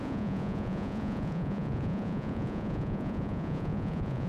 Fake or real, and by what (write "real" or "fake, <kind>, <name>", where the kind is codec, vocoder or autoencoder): fake, vocoder, Vocos